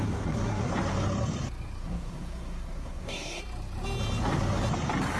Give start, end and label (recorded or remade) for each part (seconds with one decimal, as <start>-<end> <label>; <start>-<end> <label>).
0.0-0.7 remade; 0.7-1.8 recorded; 1.8-3.4 remade; 3.4-5.2 recorded